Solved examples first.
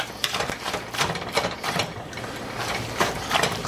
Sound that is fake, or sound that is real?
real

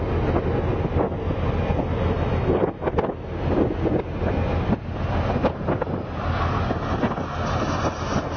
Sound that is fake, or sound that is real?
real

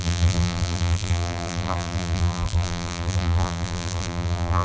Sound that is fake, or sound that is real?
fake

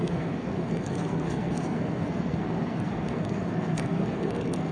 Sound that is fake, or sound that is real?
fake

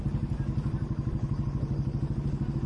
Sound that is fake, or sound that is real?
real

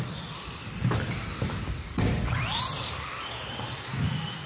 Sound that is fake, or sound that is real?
real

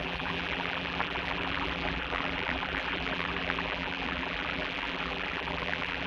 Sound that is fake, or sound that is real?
fake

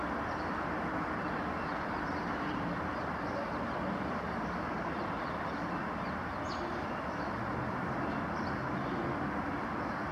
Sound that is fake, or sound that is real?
real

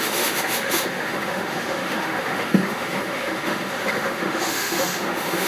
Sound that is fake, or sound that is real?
fake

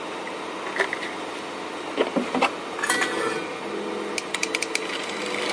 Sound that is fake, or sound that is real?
real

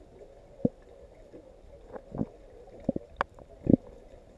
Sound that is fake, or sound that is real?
real